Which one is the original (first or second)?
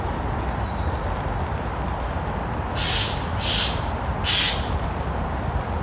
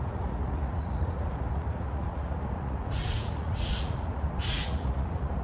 first